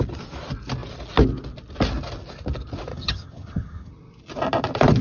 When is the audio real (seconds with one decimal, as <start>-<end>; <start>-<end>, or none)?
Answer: 0.0-2.9; 3.9-5.0